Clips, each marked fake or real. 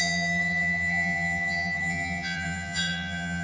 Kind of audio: fake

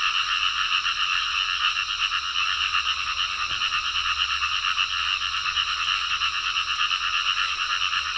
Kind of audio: real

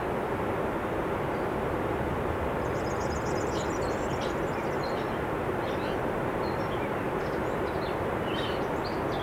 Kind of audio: real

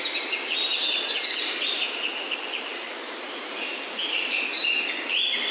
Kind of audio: fake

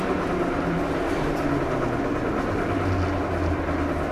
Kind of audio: real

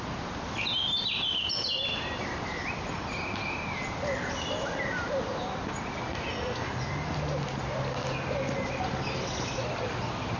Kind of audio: real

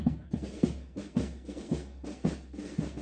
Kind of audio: fake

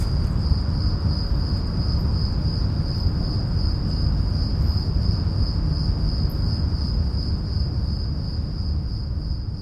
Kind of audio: real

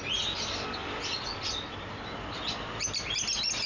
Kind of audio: real